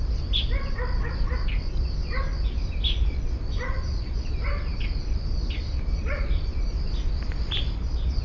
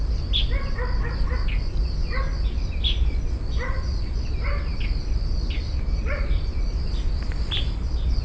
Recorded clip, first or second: second